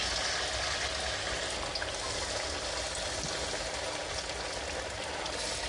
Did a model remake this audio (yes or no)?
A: no